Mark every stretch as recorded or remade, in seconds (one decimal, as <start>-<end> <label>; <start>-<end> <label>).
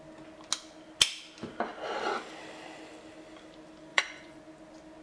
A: 0.0-3.9 recorded; 3.9-4.4 remade; 4.4-5.0 recorded